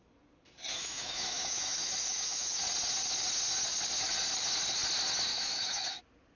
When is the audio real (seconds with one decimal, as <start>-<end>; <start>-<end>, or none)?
0.0-0.7; 2.6-5.3; 6.0-6.4